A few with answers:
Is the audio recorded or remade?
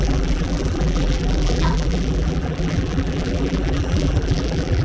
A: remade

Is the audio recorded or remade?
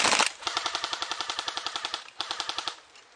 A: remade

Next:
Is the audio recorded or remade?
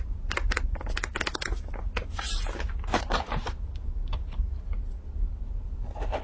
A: recorded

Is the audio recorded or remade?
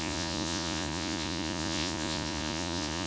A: remade